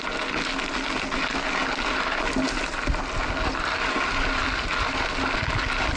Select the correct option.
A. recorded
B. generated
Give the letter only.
A